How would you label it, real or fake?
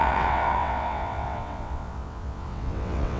fake